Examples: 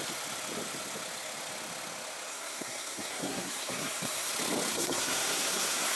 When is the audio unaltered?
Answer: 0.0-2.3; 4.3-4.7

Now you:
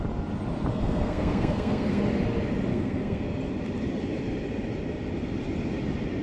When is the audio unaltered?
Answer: 0.0-0.7; 2.0-2.7; 3.2-6.2

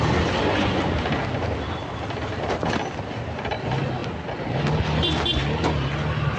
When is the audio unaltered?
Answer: 0.0-6.4

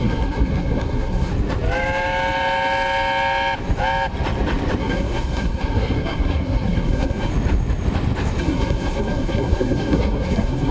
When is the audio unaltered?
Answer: 1.3-4.8; 7.3-8.4